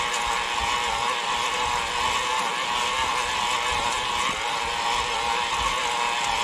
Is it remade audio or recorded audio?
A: recorded